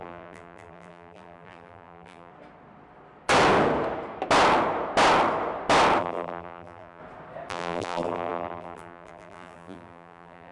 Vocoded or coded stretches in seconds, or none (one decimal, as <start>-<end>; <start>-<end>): 0.0-2.3; 6.0-7.0; 7.5-10.5